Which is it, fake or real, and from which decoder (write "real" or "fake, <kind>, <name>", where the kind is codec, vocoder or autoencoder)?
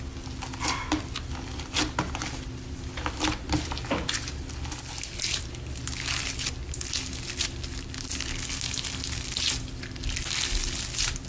real